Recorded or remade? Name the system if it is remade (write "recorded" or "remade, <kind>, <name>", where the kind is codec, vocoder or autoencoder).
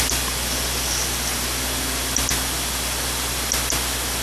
recorded